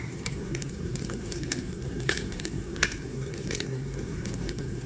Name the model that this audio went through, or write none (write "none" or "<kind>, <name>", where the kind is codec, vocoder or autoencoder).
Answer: codec, SNAC